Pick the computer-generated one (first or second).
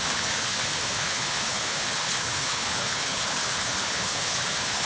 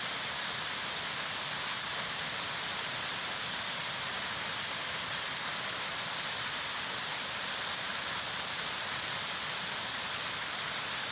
first